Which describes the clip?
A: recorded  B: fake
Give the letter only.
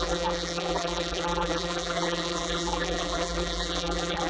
B